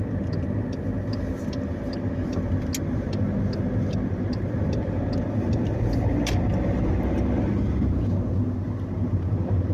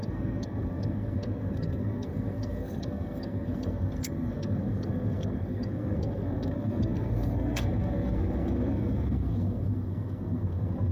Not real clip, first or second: second